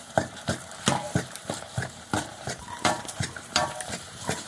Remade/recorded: remade